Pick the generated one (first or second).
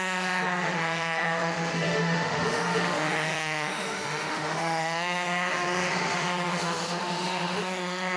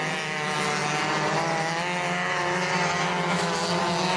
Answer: first